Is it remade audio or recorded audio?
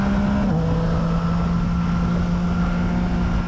recorded